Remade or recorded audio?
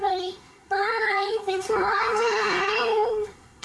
remade